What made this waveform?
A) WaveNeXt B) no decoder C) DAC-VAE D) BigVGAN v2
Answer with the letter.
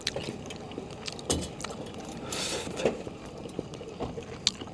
B